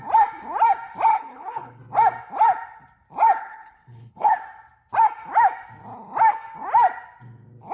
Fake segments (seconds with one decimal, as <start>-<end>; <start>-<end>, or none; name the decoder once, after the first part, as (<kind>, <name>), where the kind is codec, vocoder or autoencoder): 1.1-1.8 (codec, HILCodec); 3.4-4.4

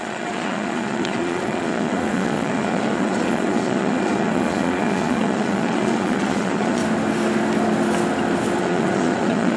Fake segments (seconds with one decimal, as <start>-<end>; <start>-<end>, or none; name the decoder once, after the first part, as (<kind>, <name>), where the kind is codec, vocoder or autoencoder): 0.0-6.8 (vocoder, Vocos); 8.6-9.6

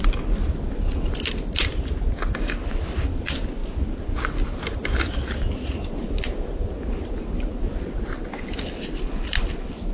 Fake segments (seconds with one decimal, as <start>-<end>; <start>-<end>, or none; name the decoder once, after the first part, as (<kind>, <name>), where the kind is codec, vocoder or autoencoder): none

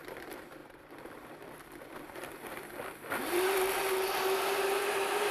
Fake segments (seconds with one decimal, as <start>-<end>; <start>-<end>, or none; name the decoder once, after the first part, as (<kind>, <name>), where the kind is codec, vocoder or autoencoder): 0.0-5.3 (vocoder, BigVGAN v2)

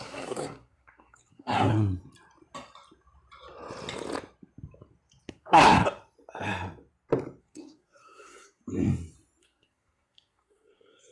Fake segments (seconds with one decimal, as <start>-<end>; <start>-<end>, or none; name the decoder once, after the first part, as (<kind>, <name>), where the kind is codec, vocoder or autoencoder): 0.0-1.7 (codec, SNAC); 5.3-5.8; 7.4-8.6; 9.4-11.1

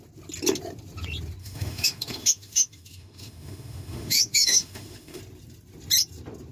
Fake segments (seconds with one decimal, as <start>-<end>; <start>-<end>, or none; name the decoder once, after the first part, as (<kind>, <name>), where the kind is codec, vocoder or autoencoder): 1.4-5.2 (autoencoder, DAC-VAE)

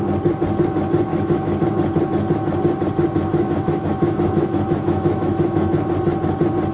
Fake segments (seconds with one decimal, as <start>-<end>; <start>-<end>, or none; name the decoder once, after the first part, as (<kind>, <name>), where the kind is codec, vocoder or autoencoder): 1.1-1.6 (autoencoder, DAC-VAE); 3.3-5.9

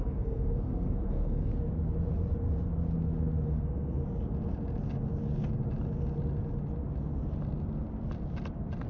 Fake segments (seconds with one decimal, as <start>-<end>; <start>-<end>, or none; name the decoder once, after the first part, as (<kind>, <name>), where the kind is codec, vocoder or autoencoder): 0.0-1.5 (codec, SNAC); 3.5-4.0